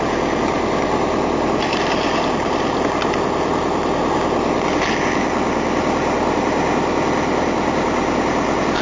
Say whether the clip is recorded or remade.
recorded